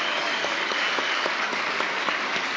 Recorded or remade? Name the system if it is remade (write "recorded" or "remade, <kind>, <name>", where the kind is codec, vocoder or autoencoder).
remade, codec, DAC